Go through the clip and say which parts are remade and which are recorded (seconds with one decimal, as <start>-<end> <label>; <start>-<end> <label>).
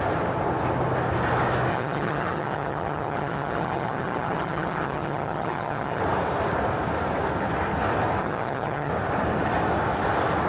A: 0.0-1.7 recorded; 1.7-6.0 remade; 6.0-8.2 recorded; 8.2-8.9 remade; 8.9-10.5 recorded